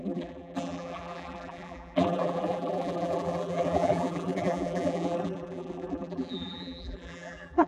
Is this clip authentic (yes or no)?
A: no